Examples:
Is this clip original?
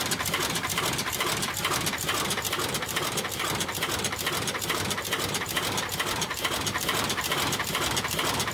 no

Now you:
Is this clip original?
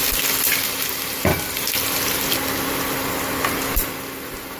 yes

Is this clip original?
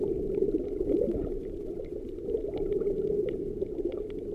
yes